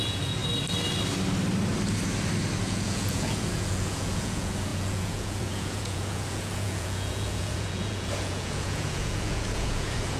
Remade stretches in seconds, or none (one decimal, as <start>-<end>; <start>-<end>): 0.0-0.4; 2.6-10.2